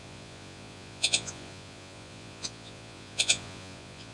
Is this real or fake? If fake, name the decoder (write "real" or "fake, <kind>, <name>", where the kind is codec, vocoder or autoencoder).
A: fake, vocoder, Vocos